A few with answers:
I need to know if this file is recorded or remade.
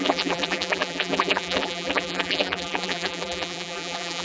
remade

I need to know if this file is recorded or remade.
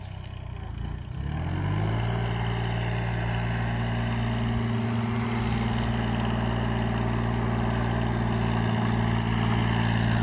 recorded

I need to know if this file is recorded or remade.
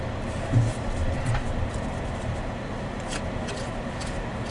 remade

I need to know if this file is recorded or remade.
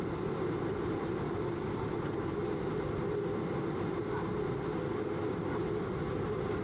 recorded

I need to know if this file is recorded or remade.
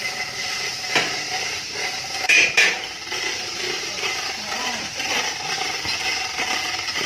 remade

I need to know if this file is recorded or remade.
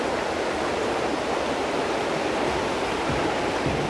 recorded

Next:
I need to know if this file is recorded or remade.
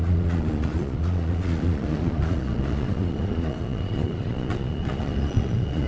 remade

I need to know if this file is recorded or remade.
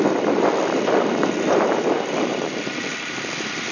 remade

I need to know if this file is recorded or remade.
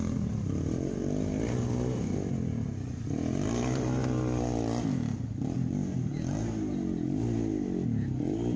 recorded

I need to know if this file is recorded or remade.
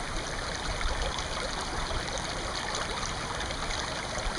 recorded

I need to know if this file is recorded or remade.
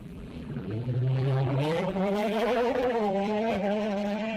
remade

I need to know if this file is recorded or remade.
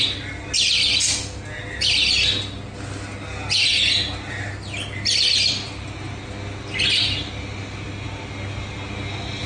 recorded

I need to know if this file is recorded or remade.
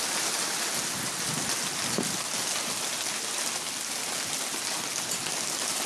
recorded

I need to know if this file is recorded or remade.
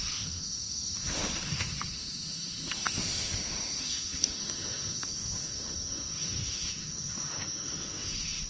remade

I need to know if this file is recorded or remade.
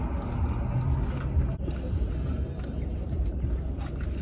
recorded